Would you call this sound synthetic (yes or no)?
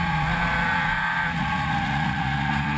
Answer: yes